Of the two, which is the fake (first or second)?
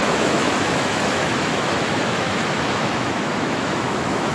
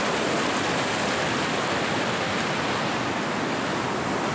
first